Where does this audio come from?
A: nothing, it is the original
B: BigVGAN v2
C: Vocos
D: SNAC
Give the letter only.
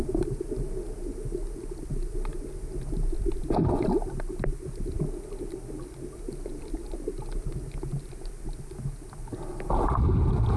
A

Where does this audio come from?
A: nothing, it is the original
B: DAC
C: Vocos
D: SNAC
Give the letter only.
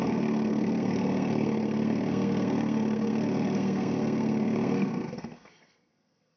D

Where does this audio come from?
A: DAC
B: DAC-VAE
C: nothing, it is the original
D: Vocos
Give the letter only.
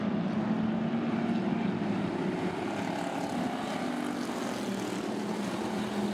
C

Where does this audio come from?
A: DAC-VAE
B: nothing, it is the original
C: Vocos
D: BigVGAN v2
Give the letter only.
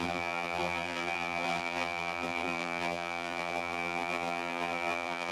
D